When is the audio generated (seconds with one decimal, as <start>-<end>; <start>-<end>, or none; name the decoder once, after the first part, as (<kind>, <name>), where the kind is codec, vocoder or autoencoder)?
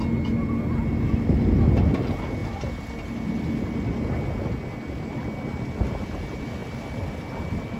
none